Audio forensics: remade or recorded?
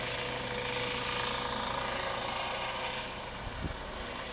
recorded